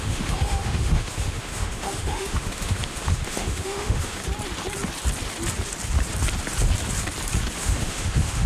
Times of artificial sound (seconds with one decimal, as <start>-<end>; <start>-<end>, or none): 0.0-4.2; 7.6-8.5